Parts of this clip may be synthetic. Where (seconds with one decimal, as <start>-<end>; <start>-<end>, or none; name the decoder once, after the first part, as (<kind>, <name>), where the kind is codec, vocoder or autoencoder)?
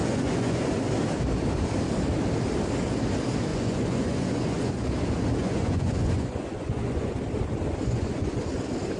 0.0-0.7 (vocoder, Vocos); 3.5-4.7; 5.4-7.2; 7.8-8.4